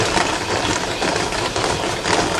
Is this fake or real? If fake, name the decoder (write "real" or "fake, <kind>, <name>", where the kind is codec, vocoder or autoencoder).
real